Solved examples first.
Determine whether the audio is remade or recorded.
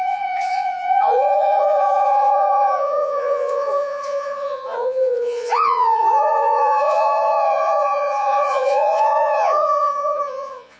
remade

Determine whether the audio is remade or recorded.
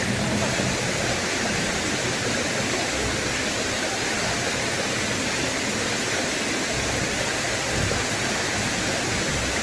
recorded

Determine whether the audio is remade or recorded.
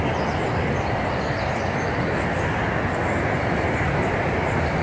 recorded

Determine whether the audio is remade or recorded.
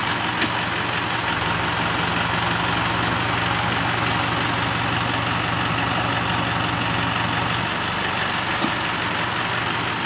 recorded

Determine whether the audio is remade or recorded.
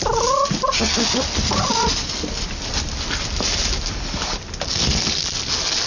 recorded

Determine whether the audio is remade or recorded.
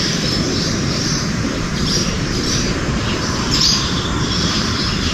remade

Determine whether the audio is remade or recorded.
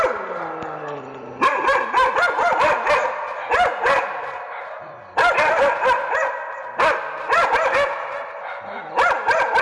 recorded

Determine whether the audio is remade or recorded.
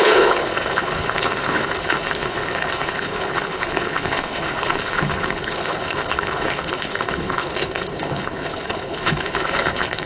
remade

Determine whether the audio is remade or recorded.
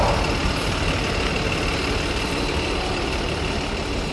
recorded